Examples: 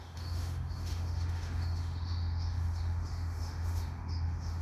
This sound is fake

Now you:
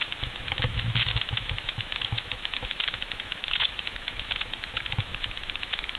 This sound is fake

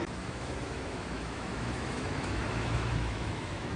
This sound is fake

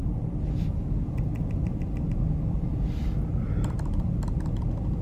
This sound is real